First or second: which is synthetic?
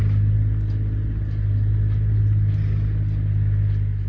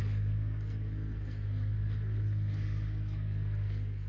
second